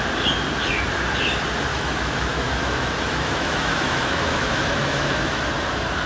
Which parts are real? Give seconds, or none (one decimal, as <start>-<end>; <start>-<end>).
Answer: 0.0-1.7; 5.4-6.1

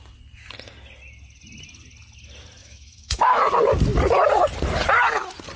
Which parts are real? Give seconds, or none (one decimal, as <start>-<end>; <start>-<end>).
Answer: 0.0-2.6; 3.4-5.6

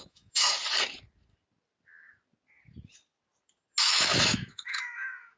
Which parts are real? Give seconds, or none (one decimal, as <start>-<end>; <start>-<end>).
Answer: 0.6-3.8

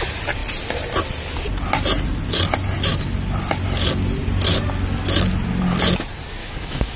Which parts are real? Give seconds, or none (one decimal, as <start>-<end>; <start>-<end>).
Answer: 0.0-6.4

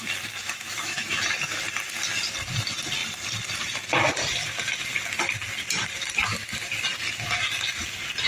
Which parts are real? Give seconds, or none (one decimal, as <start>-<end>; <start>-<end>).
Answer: 0.0-0.4; 1.2-8.3

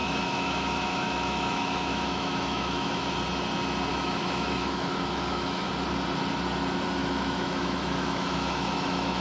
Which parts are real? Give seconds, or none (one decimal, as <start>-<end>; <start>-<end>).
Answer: 3.1-3.9; 5.7-7.0